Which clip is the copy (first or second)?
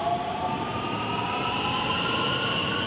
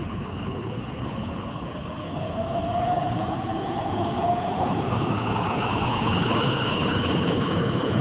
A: second